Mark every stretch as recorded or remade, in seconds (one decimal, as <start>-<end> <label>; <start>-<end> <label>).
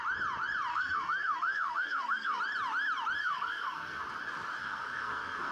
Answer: 0.0-0.7 recorded; 0.7-2.4 remade; 2.4-3.2 recorded; 3.2-4.0 remade; 4.0-4.6 recorded; 4.6-5.5 remade